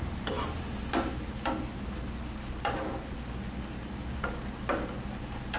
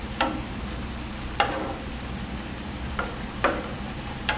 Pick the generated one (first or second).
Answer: second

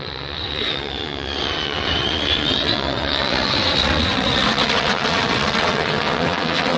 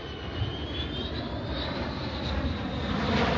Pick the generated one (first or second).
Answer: first